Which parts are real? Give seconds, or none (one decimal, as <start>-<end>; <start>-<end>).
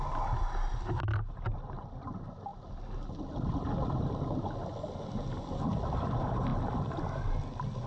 0.0-7.9